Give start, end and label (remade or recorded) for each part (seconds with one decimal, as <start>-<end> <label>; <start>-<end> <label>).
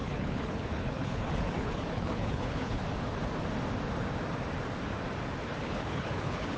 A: 0.0-2.8 remade; 2.8-5.6 recorded; 5.6-6.6 remade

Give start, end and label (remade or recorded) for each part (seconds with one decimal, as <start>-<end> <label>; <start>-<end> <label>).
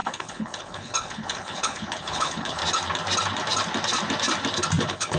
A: 0.0-2.6 remade; 2.6-4.8 recorded; 4.8-5.2 remade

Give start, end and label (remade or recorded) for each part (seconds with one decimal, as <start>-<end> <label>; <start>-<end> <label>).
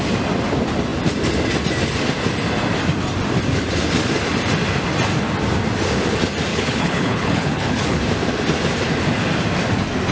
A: 0.0-6.5 recorded; 6.5-8.0 remade; 8.0-10.1 recorded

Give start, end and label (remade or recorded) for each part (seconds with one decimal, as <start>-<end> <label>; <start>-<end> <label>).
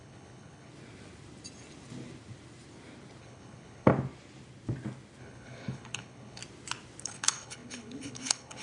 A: 0.0-0.7 remade; 0.7-3.2 recorded; 3.2-3.9 remade; 3.9-5.2 recorded; 5.2-6.4 remade; 6.4-7.0 recorded; 7.0-8.6 remade